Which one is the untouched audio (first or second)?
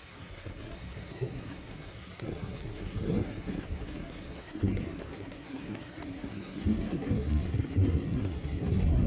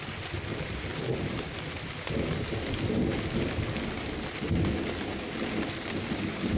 second